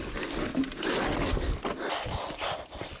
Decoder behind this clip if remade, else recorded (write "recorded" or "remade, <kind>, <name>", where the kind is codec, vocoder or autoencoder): recorded